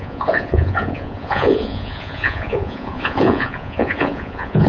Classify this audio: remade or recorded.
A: remade